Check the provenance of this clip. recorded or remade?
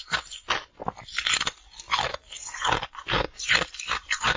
recorded